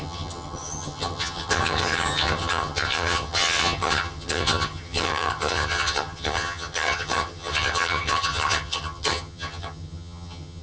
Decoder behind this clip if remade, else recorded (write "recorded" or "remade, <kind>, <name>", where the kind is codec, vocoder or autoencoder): remade, vocoder, HiFi-GAN